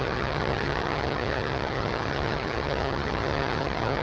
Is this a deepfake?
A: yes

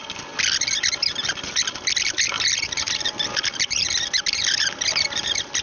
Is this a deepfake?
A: no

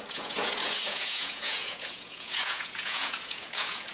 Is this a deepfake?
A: yes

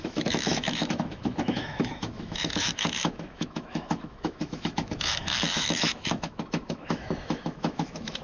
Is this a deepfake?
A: yes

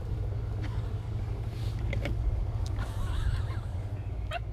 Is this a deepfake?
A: yes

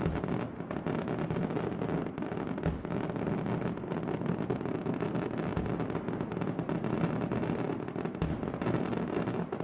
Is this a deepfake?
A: no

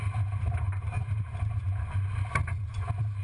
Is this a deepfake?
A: yes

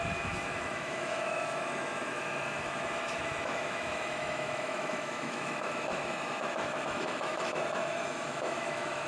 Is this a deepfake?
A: yes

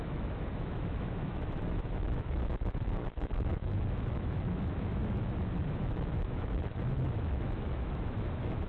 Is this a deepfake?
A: yes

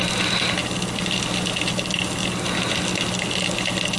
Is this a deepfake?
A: no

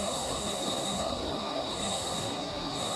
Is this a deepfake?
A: yes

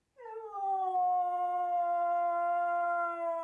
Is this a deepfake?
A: no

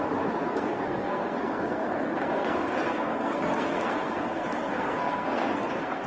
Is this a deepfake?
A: yes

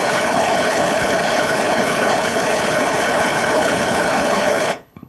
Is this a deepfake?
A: yes